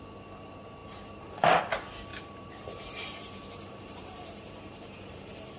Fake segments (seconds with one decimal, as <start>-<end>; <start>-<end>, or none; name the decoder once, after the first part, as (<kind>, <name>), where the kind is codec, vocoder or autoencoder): 0.8-1.6 (vocoder, BigVGAN v2); 2.1-5.6